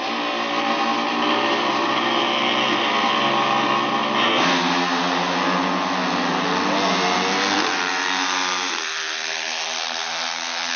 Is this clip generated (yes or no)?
no